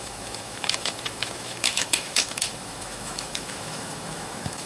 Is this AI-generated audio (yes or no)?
yes